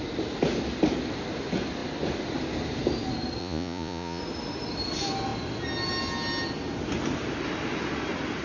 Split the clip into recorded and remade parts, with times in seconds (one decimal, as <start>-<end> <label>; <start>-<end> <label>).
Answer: 0.0-3.4 recorded; 3.4-4.2 remade; 4.2-8.4 recorded